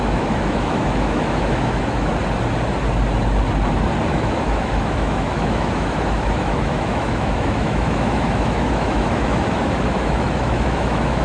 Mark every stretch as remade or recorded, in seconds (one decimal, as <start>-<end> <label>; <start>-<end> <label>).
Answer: 0.0-2.1 remade; 2.1-4.1 recorded; 4.1-11.2 remade